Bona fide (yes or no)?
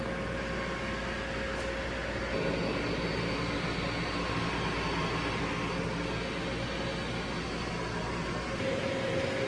yes